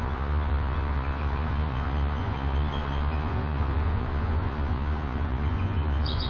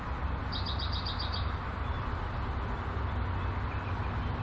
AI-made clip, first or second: first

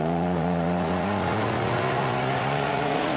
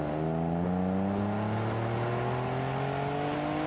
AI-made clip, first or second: first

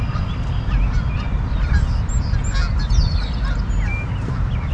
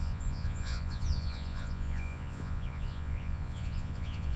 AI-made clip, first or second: second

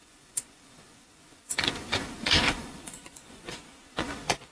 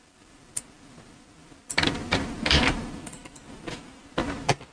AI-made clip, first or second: first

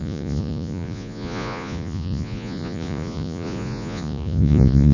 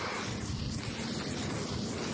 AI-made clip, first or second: first